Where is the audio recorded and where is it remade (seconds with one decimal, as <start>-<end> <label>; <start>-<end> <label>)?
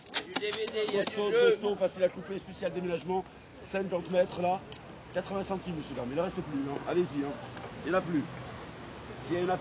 0.0-9.6 recorded